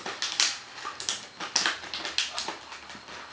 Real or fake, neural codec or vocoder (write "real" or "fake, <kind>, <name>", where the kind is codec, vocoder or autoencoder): real